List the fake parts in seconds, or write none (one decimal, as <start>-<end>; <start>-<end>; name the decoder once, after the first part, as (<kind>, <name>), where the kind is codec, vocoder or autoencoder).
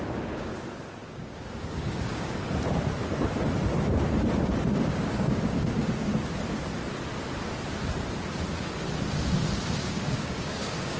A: 0.0-0.5 (codec, DAC); 1.1-2.4; 4.7-6.1; 9.8-11.0